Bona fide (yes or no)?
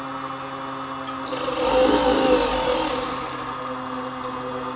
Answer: yes